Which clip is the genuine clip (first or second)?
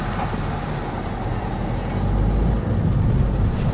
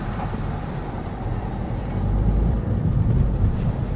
first